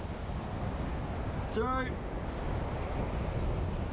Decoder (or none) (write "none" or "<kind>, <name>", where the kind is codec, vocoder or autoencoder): none